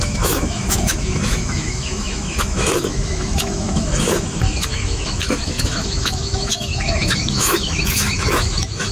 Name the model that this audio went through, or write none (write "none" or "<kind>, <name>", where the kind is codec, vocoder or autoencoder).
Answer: autoencoder, DAC-VAE